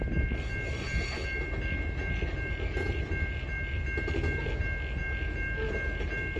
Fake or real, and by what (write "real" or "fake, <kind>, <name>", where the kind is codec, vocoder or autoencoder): real